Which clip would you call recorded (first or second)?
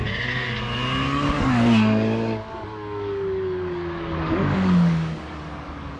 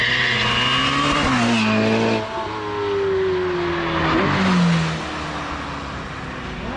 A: second